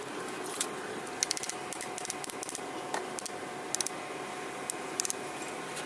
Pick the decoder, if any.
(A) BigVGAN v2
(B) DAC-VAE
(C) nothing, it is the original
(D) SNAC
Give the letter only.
C